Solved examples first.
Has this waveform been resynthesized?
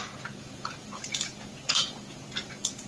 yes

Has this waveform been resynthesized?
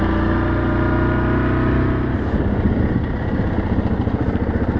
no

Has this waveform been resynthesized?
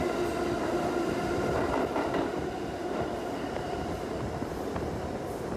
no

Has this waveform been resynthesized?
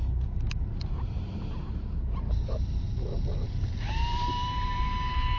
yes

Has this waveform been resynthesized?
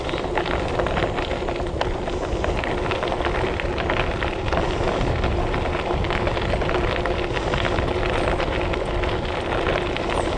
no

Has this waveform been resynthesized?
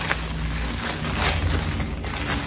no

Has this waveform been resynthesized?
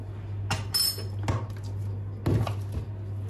no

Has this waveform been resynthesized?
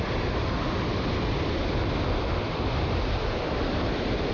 yes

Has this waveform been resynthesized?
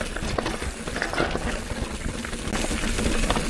no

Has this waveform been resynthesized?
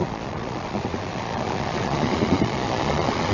yes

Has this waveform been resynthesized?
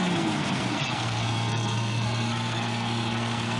yes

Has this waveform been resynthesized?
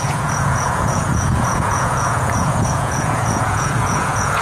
yes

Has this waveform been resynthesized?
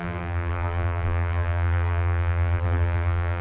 yes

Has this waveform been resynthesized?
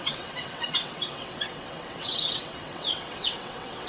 yes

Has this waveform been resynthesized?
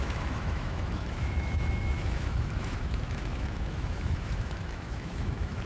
yes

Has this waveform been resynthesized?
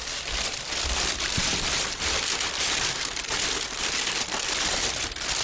yes